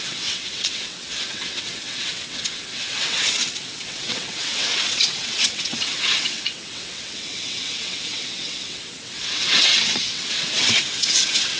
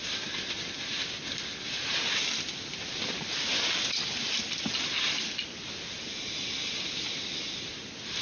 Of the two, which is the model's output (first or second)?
first